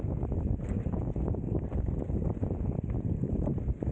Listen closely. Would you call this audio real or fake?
real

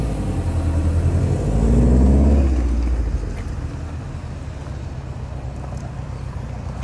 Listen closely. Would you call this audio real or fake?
real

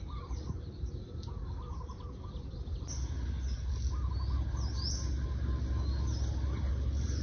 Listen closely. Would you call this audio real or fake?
real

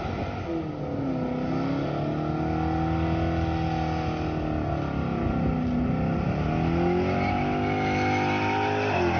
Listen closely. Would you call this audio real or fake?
real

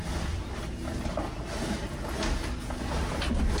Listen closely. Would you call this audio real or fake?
real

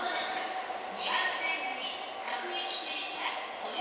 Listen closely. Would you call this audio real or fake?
real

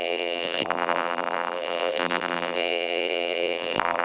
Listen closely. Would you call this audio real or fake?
fake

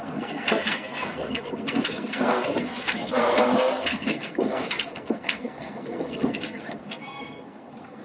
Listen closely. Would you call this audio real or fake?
fake